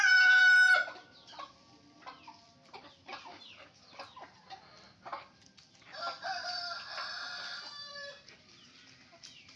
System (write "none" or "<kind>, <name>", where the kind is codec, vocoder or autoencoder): vocoder, BigVGAN v2